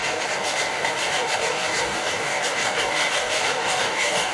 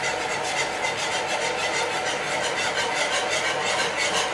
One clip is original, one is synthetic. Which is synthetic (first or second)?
first